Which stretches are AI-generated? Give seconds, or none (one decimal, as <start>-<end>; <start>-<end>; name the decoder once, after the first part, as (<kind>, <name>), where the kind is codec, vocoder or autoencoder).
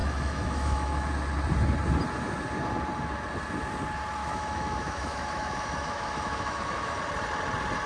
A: 0.0-1.1 (autoencoder, DAC-VAE); 4.2-7.0